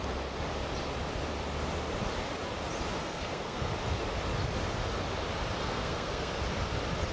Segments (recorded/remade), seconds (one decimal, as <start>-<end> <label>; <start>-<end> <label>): 0.0-3.0 recorded; 3.0-3.7 remade; 3.7-5.6 recorded; 5.6-6.4 remade; 6.4-7.1 recorded